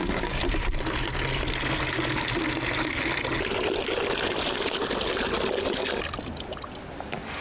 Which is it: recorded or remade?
recorded